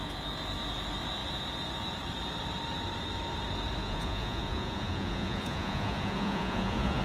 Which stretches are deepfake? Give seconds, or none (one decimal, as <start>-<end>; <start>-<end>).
3.8-7.0